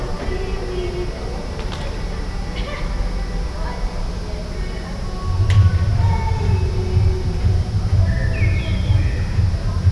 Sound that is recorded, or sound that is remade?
recorded